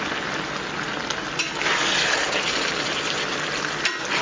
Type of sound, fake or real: real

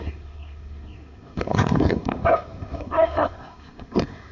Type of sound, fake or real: fake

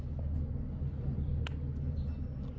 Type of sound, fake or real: real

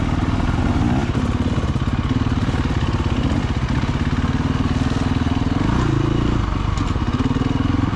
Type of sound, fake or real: real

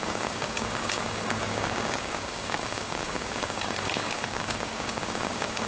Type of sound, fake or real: fake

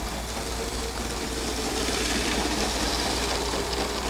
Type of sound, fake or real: real